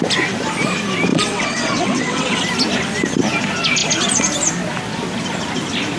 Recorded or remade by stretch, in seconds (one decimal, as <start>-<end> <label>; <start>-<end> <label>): 0.0-1.1 recorded; 1.1-2.4 remade; 2.4-6.0 recorded